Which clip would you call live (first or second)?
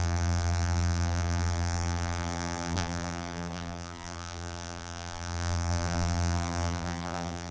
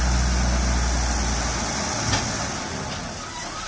second